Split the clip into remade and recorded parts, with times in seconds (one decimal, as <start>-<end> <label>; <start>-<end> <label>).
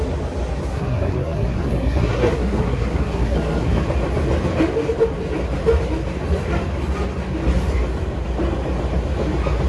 0.0-0.7 recorded; 0.7-3.8 remade; 3.8-9.7 recorded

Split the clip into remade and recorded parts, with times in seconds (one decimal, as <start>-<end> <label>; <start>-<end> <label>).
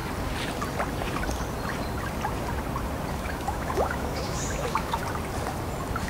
0.0-3.1 recorded; 3.1-5.0 remade; 5.0-6.1 recorded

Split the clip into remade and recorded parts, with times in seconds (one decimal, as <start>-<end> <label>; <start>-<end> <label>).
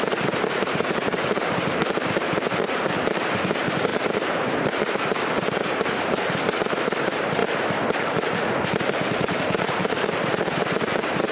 0.0-7.4 remade; 7.4-8.8 recorded; 8.8-11.3 remade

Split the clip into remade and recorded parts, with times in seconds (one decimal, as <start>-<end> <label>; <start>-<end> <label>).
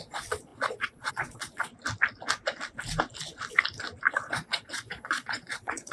0.0-1.7 remade; 1.7-4.1 recorded; 4.1-5.9 remade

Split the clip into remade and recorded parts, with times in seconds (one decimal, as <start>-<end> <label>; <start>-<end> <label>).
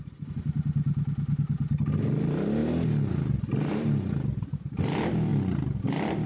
0.0-6.3 recorded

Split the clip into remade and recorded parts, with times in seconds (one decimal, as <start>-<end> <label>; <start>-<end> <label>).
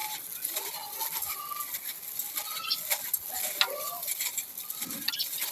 0.0-5.5 recorded